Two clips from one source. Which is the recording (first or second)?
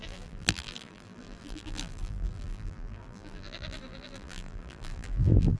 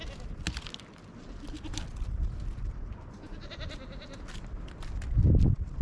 second